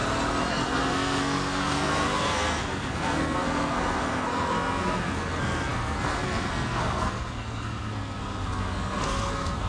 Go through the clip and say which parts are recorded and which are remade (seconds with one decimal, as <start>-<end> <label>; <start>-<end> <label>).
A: 0.0-0.5 recorded; 0.5-9.7 remade